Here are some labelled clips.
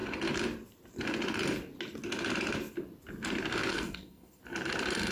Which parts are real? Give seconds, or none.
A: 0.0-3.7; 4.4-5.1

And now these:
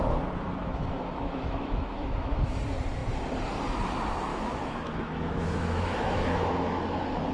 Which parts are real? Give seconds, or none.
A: 0.0-0.6; 2.6-4.3; 6.5-7.3